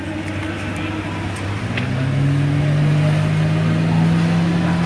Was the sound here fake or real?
real